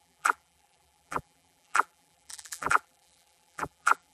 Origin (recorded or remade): remade